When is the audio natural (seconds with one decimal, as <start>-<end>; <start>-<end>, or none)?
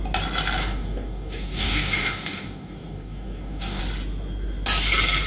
0.0-0.6; 3.8-5.3